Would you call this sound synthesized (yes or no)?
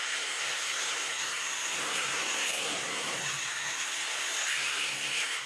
yes